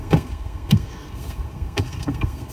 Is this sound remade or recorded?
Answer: remade